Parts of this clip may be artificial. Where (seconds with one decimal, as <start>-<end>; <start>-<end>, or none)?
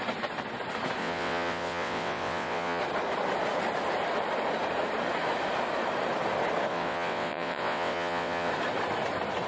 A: 1.0-2.8; 6.7-8.5